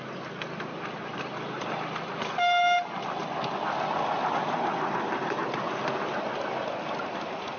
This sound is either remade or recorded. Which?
recorded